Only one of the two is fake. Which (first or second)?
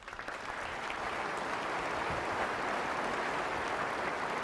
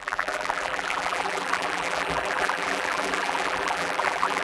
second